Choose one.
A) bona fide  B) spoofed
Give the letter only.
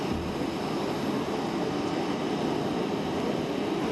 A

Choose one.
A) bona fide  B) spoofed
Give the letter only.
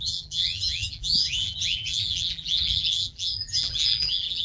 B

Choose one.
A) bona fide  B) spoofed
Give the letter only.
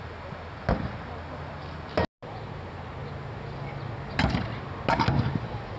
A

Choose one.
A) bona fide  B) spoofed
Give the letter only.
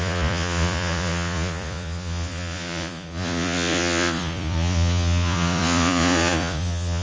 B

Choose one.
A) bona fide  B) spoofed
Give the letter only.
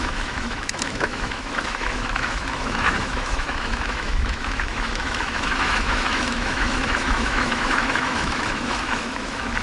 B